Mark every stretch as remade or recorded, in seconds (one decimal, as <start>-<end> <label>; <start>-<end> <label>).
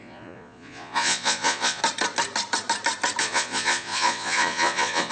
0.0-1.8 remade; 1.8-3.2 recorded; 3.2-5.1 remade